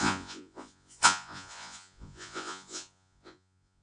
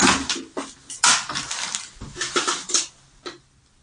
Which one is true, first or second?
second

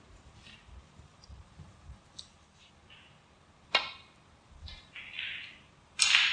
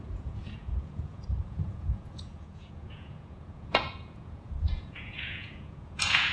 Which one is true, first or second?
first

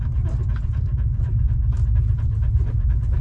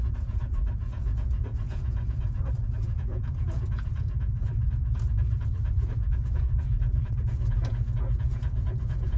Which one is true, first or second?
first